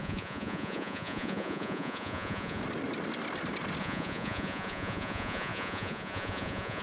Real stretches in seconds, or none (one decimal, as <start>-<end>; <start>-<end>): 2.6-3.8